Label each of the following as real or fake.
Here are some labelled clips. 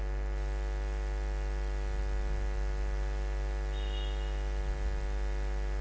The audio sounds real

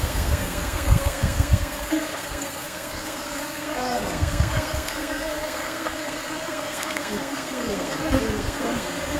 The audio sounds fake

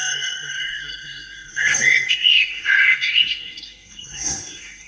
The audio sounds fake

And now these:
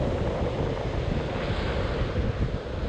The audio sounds real